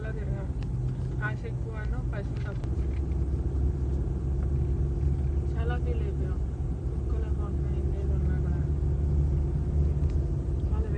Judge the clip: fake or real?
real